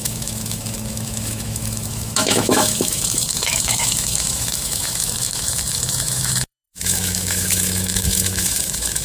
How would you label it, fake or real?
fake